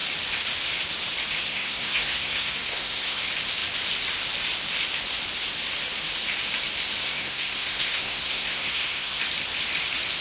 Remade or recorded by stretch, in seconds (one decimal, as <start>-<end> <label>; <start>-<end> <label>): 0.0-1.5 recorded; 1.5-3.2 remade; 3.2-7.0 recorded; 7.0-9.2 remade; 9.2-10.2 recorded